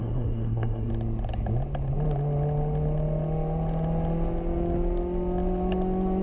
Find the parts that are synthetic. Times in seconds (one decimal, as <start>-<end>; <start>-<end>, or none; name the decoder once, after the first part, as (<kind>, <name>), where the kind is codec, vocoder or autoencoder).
0.0-0.9 (codec, SNAC)